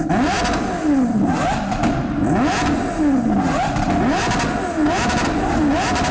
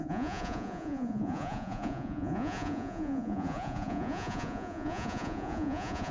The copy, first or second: second